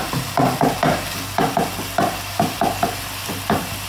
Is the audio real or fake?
real